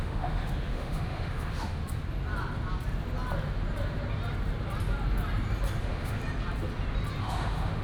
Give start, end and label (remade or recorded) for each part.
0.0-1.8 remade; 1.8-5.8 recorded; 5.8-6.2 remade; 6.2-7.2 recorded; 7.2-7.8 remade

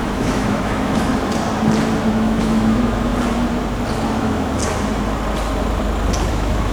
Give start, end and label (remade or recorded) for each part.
0.0-1.1 remade; 1.1-2.1 recorded; 2.1-3.1 remade; 3.1-4.1 recorded; 4.1-4.6 remade; 4.6-6.3 recorded; 6.3-6.7 remade

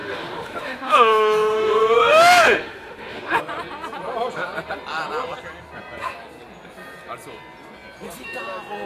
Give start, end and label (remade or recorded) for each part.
0.0-3.4 remade; 3.4-8.9 recorded

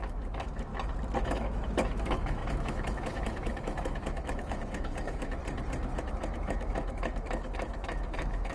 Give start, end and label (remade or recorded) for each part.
0.0-0.7 remade; 0.7-1.2 recorded; 1.2-5.4 remade; 5.4-6.0 recorded; 6.0-8.5 remade

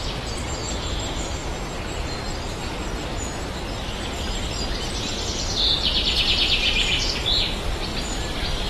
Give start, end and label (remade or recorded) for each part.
0.0-8.7 recorded

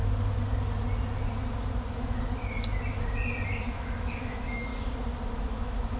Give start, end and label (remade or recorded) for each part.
0.0-3.6 recorded; 3.6-4.7 remade; 4.7-5.4 recorded; 5.4-6.0 remade

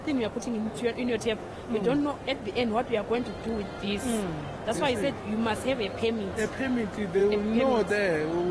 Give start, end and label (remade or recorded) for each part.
0.0-1.8 remade; 1.8-4.7 recorded; 4.7-7.2 remade; 7.2-8.5 recorded

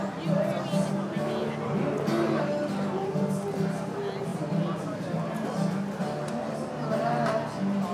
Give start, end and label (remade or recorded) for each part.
0.0-7.9 recorded